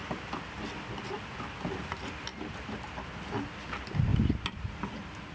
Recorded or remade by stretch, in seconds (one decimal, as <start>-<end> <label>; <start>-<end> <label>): 0.0-0.9 remade; 0.9-4.1 recorded; 4.1-5.3 remade